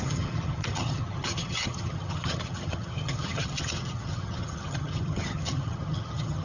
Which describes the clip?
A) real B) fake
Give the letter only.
B